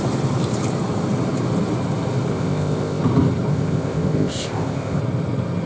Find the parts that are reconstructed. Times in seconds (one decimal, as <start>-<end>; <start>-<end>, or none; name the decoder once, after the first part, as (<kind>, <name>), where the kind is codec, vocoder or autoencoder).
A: 2.3-3.0 (codec, ZipCodec); 3.5-5.0